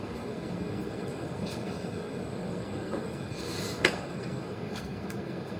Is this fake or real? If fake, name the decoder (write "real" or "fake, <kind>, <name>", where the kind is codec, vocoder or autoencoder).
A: fake, codec, SNAC